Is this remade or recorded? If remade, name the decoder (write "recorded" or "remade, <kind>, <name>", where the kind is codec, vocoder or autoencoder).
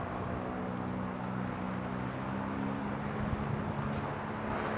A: recorded